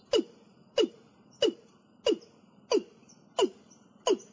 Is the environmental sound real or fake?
real